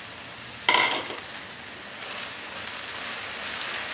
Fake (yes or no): no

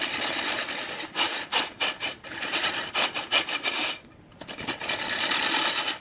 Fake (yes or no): no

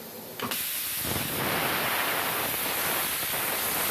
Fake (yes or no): no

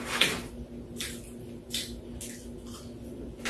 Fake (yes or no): no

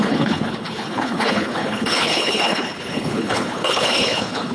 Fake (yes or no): yes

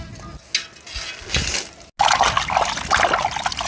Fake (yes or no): no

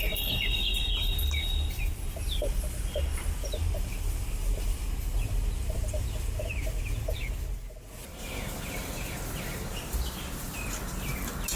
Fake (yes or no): no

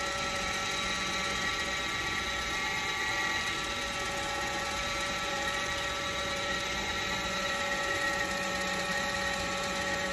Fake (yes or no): yes